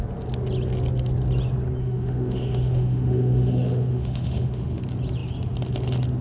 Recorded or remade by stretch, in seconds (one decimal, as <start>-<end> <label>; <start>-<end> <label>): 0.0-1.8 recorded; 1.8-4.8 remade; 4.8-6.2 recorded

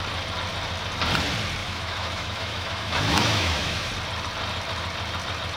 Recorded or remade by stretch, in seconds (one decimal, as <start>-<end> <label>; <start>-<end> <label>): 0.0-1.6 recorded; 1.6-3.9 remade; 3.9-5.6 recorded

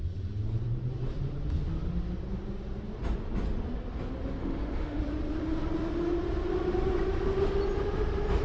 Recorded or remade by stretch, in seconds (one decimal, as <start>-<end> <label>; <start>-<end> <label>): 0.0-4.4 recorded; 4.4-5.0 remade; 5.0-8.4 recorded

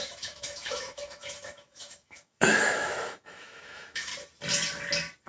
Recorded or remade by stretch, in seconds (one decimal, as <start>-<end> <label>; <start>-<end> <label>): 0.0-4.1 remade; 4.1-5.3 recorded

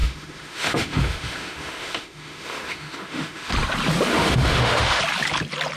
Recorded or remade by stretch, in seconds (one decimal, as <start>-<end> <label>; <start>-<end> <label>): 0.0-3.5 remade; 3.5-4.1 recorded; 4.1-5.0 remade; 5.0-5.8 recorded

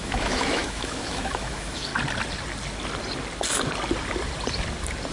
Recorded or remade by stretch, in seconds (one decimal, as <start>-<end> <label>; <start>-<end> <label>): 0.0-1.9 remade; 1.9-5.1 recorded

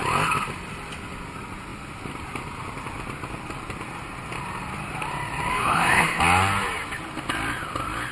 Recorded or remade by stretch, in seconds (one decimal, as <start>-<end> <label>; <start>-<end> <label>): 0.0-5.5 recorded; 5.5-6.2 remade; 6.2-8.1 recorded